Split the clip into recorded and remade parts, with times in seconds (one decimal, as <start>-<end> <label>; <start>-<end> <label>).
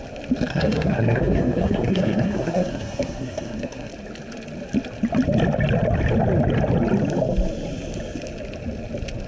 0.0-0.5 recorded; 0.5-3.9 remade; 3.9-9.3 recorded